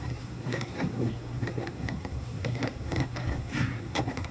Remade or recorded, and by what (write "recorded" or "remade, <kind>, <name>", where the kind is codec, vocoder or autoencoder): remade, codec, SNAC